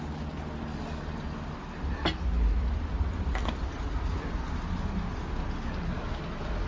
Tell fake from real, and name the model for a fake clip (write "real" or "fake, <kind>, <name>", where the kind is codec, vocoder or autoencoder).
real